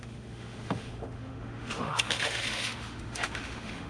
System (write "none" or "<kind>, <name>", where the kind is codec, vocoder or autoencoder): autoencoder, DAC-VAE